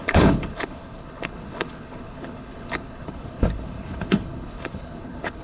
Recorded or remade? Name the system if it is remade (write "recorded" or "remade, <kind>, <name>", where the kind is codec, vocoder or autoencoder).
remade, codec, HILCodec